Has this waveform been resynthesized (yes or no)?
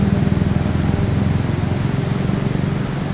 no